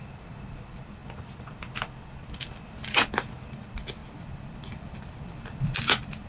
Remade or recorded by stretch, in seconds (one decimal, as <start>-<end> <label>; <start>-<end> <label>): 0.0-1.0 remade; 1.0-3.5 recorded; 3.5-6.3 remade